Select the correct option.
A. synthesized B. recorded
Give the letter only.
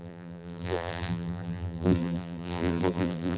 A